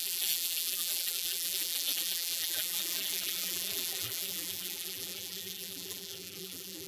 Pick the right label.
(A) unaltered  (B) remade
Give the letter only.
B